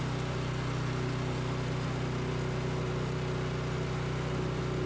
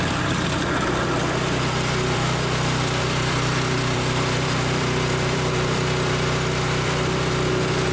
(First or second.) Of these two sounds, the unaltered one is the first